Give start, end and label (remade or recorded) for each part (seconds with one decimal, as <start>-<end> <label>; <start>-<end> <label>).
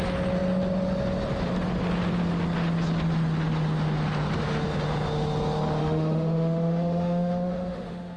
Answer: 0.0-5.8 recorded; 5.8-8.2 remade